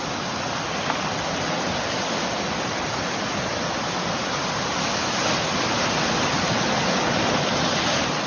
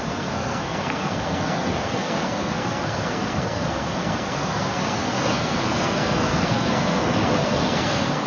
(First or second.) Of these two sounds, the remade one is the second